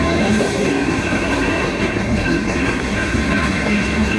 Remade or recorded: remade